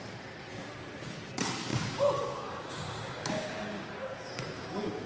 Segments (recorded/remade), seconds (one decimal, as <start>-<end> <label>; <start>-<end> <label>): 0.0-1.7 recorded; 1.7-5.1 remade